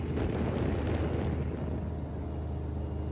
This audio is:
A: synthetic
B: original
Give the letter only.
B